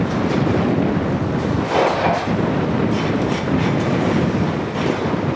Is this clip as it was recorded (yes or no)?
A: yes